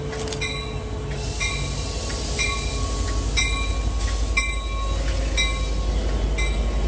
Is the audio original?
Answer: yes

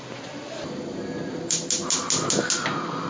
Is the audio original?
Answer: yes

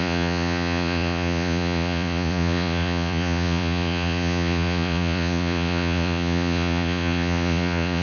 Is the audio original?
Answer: no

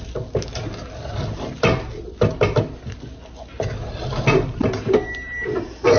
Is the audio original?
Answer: yes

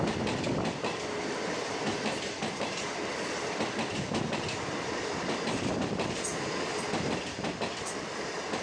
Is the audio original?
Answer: yes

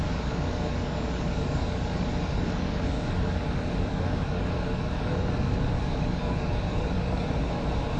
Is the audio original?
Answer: no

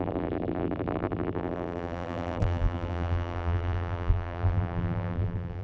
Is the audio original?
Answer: no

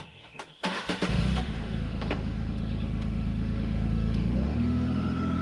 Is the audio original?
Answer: no